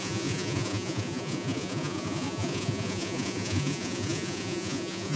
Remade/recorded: remade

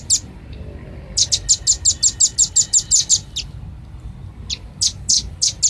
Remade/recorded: recorded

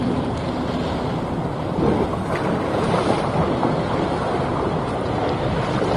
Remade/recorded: recorded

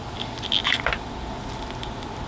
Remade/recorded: recorded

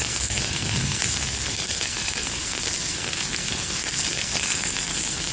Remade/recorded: remade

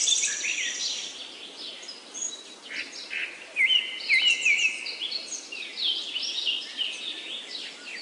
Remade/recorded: recorded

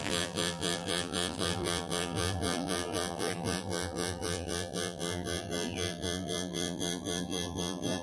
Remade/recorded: remade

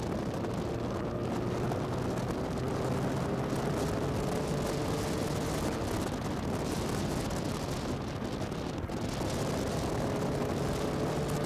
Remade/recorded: recorded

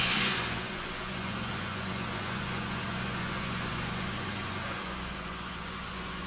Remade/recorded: remade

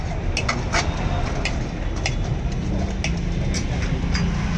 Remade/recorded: recorded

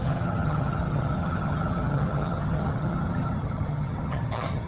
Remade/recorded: remade